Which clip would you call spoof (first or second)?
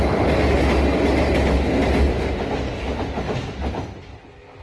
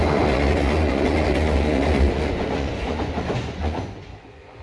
second